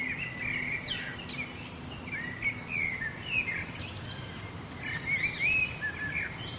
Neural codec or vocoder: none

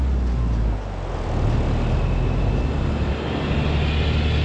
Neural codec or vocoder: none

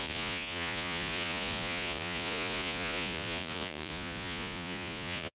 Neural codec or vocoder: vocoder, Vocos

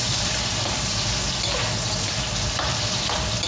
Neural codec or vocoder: none